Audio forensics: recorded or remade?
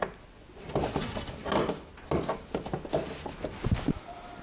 recorded